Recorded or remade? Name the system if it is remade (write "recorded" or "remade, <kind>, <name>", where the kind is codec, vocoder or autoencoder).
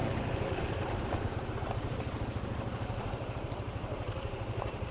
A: remade, vocoder, BigVGAN v2